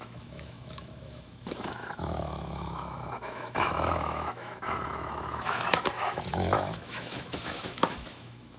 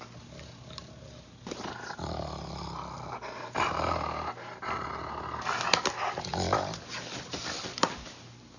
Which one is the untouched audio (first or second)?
second